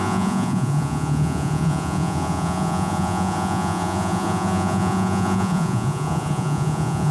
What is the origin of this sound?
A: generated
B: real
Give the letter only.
A